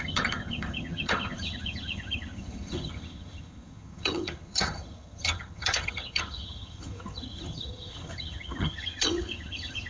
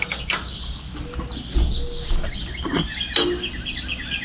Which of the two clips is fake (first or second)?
first